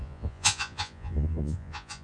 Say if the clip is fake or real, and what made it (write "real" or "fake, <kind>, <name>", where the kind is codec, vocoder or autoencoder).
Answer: fake, vocoder, Vocos